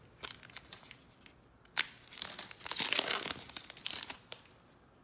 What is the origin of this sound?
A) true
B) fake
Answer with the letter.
A